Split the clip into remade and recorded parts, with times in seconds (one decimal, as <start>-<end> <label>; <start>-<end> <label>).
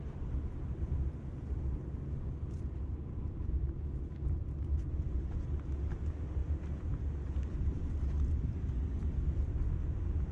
0.0-6.4 recorded; 6.4-8.1 remade; 8.1-10.3 recorded